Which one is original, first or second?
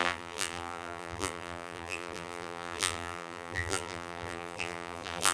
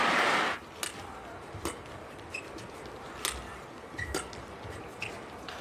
second